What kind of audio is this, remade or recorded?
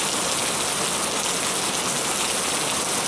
recorded